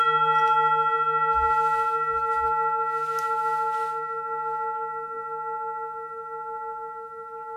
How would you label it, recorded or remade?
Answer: recorded